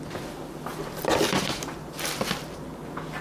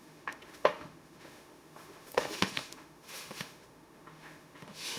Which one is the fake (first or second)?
second